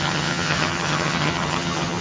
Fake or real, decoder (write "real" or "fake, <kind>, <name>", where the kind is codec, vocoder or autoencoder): fake, vocoder, HiFi-GAN